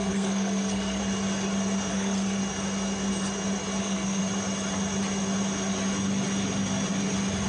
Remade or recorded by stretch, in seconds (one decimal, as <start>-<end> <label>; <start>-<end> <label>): 0.0-1.0 remade; 1.0-1.9 recorded; 1.9-2.4 remade; 2.4-3.8 recorded; 3.8-4.2 remade; 4.2-7.5 recorded